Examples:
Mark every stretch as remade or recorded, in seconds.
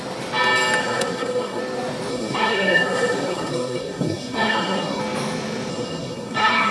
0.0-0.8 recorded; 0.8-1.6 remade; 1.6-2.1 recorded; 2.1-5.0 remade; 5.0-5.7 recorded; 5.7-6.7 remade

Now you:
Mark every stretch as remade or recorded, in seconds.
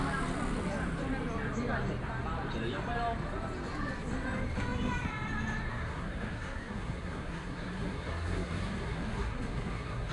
0.0-5.7 recorded; 5.7-10.1 remade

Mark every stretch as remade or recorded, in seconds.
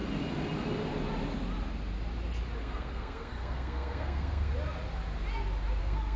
0.0-2.6 recorded; 2.6-4.5 remade; 4.5-5.8 recorded; 5.8-6.2 remade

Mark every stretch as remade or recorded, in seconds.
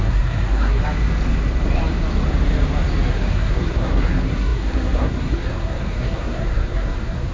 0.0-0.8 remade; 0.8-3.1 recorded; 3.1-7.3 remade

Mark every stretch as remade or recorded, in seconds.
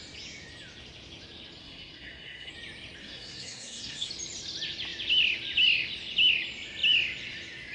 0.0-1.6 recorded; 1.6-2.5 remade; 2.5-3.0 recorded; 3.0-4.1 remade; 4.1-7.7 recorded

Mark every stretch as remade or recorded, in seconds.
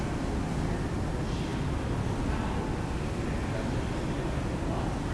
0.0-5.1 recorded